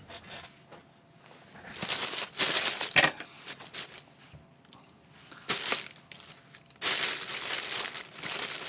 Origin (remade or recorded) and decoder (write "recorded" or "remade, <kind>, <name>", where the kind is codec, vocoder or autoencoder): recorded